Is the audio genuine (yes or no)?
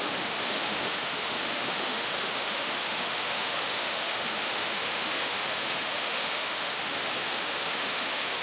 no